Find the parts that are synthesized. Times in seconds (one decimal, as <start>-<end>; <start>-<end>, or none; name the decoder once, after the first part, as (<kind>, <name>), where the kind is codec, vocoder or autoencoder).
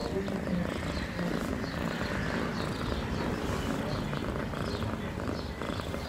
none